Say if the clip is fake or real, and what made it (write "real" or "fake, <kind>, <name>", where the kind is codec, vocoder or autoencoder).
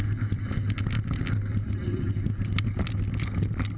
real